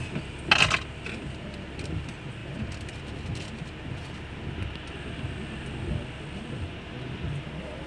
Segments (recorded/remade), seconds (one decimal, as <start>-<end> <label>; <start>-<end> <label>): 0.0-7.9 recorded